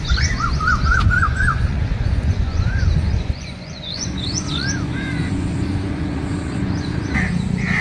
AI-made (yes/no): yes